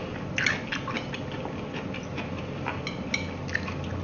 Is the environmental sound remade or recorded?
recorded